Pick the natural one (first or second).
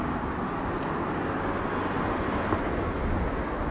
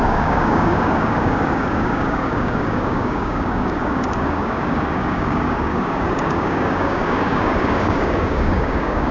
first